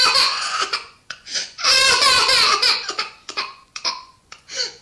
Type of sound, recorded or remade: remade